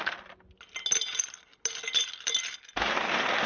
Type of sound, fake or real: real